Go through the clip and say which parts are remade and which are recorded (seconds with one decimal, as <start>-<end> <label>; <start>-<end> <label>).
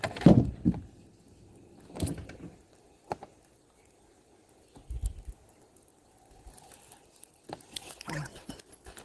0.0-7.7 recorded; 7.7-8.6 remade; 8.6-9.0 recorded